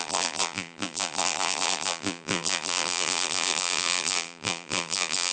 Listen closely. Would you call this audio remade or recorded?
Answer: remade